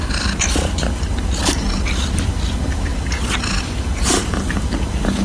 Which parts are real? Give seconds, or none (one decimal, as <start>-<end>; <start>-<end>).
0.0-5.2